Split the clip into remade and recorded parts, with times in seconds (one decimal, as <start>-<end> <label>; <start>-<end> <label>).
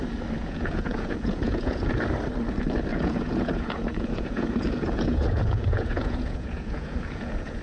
0.0-0.4 recorded; 0.4-2.0 remade; 2.0-2.9 recorded; 2.9-7.6 remade